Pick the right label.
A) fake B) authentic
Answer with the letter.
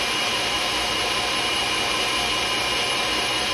A